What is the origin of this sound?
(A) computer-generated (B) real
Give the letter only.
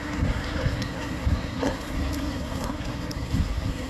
A